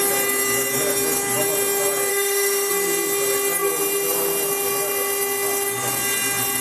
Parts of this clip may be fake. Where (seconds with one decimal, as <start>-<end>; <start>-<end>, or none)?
2.1-2.7